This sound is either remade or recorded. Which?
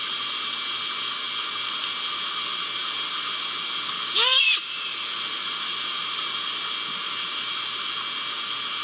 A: recorded